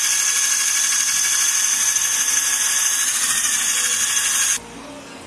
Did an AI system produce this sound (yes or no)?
no